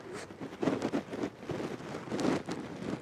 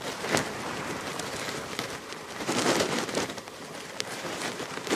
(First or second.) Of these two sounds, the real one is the first